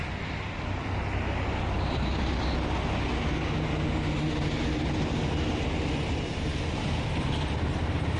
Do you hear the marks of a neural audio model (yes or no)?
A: no